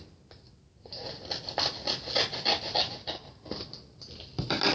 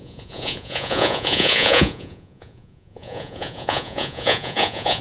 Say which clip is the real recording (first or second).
first